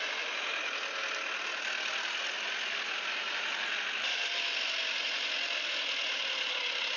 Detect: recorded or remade recorded